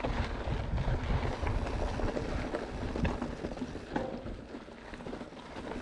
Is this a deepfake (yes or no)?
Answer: no